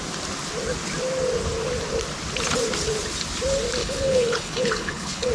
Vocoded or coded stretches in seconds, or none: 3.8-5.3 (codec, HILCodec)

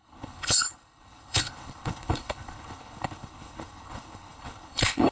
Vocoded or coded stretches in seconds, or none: 0.0-5.1 (codec, HILCodec)